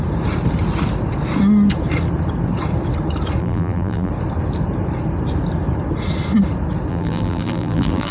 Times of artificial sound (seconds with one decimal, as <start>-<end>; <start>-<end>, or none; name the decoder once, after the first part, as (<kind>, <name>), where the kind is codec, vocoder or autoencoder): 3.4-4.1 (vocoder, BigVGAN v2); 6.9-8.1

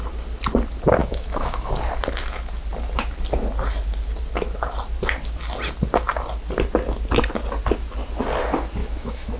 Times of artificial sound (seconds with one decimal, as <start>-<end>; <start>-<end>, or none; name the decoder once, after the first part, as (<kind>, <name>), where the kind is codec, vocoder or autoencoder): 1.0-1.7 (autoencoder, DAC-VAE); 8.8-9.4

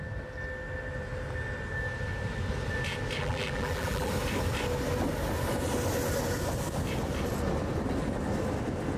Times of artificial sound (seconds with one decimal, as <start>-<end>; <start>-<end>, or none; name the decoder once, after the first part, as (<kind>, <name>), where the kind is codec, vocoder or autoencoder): 3.2-4.1 (vocoder, BigVGAN v2)

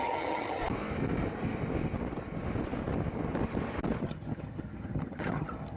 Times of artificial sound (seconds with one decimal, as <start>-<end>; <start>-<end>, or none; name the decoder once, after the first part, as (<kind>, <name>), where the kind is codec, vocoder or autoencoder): 0.0-0.6 (vocoder, HiFi-GAN); 4.0-5.8